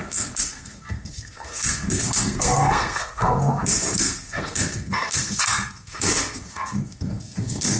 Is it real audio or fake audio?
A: fake